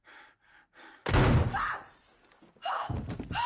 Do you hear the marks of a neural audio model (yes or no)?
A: no